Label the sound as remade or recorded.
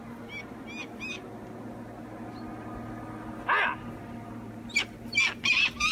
recorded